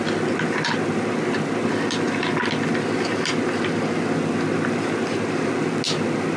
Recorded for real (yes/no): yes